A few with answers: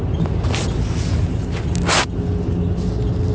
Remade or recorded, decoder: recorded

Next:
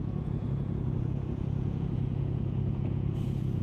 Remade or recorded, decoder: remade, vocoder, Vocos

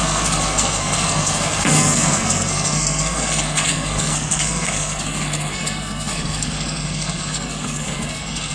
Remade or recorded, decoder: remade, codec, SNAC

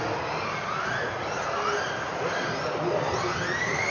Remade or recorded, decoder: recorded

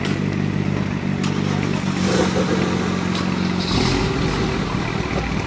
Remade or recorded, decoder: recorded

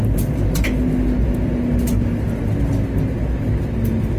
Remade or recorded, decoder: recorded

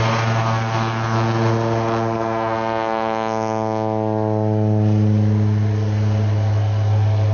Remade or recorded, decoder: recorded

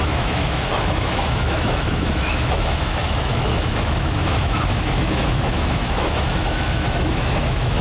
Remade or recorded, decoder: remade, autoencoder, DAC-VAE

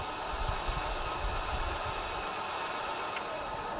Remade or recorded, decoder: recorded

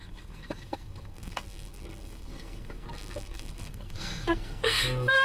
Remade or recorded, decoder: remade, codec, SNAC